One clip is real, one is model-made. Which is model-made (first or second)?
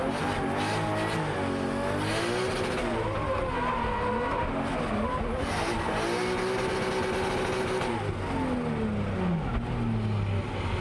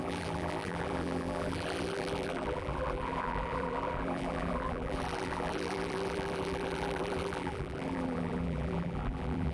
second